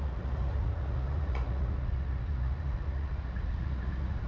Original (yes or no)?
no